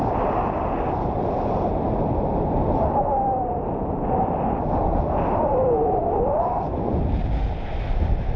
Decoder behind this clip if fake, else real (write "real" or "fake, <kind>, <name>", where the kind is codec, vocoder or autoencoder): real